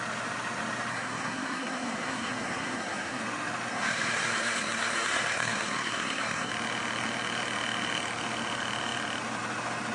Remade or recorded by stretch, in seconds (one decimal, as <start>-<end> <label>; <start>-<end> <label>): 0.0-0.9 recorded; 0.9-3.2 remade; 3.2-3.7 recorded; 3.7-6.5 remade; 6.5-9.9 recorded